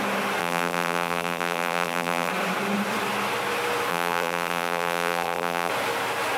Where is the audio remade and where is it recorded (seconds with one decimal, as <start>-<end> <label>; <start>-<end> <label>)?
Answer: 0.0-0.4 recorded; 0.4-2.3 remade; 2.3-3.9 recorded; 3.9-5.7 remade; 5.7-6.4 recorded